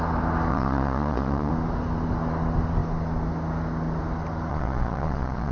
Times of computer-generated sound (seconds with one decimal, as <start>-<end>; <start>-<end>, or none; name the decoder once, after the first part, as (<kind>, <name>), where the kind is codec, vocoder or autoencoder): 0.5-1.5 (vocoder, Vocos); 4.5-5.5